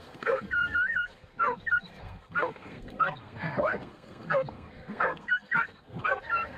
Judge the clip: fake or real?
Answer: fake